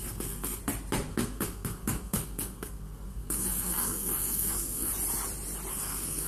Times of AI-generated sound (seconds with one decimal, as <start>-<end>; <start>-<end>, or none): 0.0-0.6; 1.1-4.9; 5.7-6.3